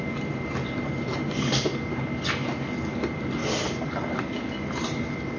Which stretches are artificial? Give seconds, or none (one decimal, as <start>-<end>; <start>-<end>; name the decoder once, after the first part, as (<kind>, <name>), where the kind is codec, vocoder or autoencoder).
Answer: none